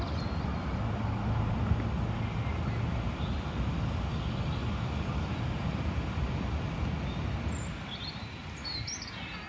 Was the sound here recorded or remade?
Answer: recorded